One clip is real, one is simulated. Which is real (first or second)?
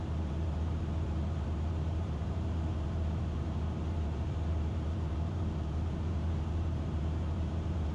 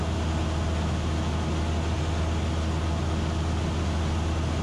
second